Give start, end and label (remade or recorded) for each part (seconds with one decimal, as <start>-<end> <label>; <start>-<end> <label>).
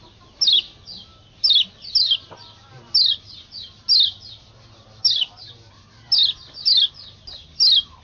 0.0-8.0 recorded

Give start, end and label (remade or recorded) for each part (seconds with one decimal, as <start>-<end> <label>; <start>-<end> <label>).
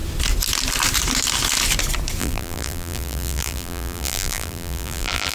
0.0-2.2 recorded; 2.2-5.3 remade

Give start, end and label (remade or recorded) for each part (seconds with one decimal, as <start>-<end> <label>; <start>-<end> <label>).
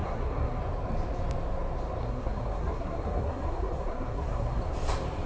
0.0-0.6 remade; 0.6-2.0 recorded; 2.0-4.6 remade; 4.6-5.3 recorded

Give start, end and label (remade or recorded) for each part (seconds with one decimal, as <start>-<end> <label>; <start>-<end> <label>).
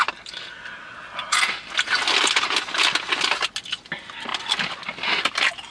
0.0-5.7 recorded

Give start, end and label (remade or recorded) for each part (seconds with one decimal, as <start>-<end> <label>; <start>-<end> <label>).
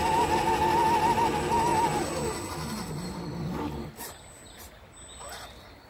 0.0-5.9 recorded